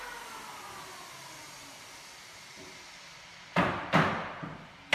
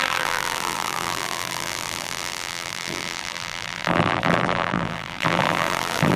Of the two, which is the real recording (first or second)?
first